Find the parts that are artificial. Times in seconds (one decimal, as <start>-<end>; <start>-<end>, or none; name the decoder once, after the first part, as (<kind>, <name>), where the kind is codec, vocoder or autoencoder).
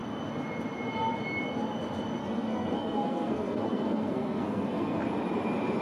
2.2-5.0 (codec, SNAC)